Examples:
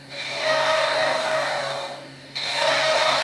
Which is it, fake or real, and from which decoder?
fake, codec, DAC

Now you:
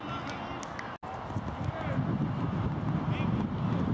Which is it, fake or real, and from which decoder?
real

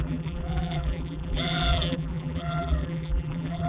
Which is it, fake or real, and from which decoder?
fake, vocoder, BigVGAN v2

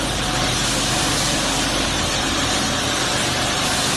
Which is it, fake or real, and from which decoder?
real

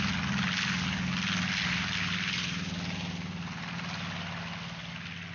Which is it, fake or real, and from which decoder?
real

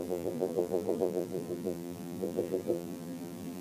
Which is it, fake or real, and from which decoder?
fake, vocoder, BigVGAN v2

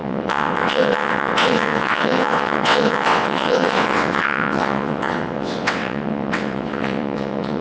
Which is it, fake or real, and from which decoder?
fake, vocoder, WaveNeXt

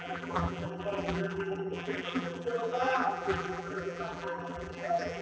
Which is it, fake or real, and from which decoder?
fake, vocoder, BigVGAN v2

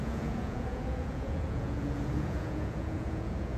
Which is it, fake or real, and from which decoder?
fake, vocoder, Vocos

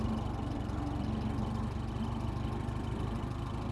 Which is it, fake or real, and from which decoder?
real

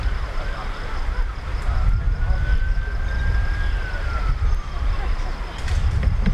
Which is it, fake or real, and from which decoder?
real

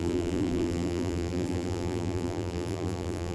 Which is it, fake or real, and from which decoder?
fake, vocoder, BigVGAN v2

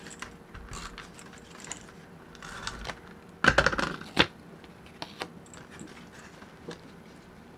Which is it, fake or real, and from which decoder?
real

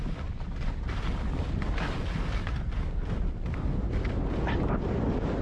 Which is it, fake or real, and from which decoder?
real